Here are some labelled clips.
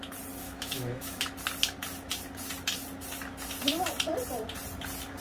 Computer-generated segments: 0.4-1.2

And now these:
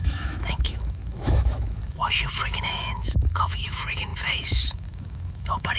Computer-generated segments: 0.0-5.8

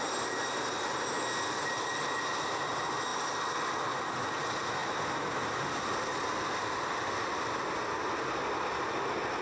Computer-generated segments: 3.1-3.7; 4.8-5.8